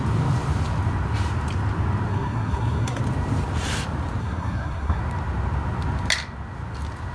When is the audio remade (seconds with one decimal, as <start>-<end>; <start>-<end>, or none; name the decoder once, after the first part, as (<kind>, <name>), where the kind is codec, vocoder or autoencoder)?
2.1-3.0 (codec, SNAC); 4.2-5.0